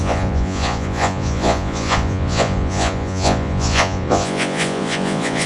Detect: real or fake fake